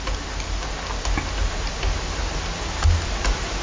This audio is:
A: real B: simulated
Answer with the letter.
A